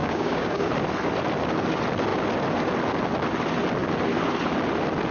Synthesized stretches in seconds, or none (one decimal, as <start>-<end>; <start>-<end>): 0.0-0.7

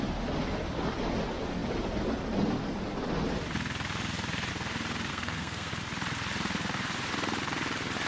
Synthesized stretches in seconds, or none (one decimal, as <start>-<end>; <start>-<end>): 5.1-5.7